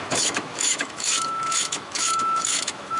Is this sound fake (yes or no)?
yes